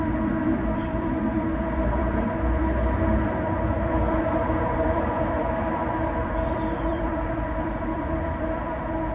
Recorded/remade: remade